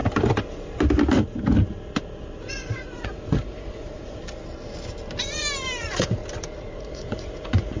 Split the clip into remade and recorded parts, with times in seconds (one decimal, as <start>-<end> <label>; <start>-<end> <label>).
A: 0.0-2.5 recorded; 2.5-4.2 remade; 4.2-5.8 recorded; 5.8-6.2 remade; 6.2-6.8 recorded; 6.8-7.8 remade